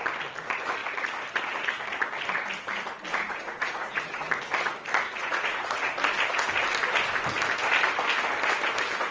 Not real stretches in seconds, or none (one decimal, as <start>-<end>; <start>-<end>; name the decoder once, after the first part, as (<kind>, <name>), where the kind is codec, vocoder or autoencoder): 3.1-4.3 (vocoder, Vocos); 5.2-5.9